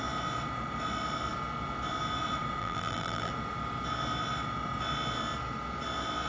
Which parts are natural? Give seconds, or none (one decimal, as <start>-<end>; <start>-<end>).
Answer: 0.0-2.6; 3.3-6.3

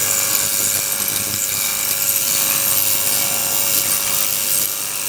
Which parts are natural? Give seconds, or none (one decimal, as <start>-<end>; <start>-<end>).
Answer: 0.0-5.1

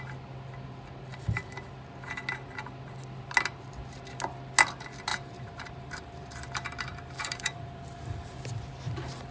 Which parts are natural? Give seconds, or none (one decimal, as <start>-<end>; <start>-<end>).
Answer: 0.0-5.1; 8.4-9.3

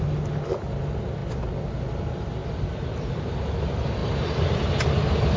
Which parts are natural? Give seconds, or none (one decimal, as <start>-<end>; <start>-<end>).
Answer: 0.0-4.0

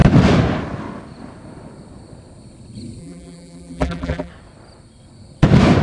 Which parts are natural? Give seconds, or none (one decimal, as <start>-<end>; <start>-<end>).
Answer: 0.0-3.0; 4.3-5.8

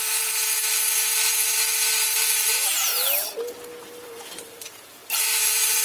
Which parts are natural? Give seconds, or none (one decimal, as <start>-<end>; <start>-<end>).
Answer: 2.9-3.8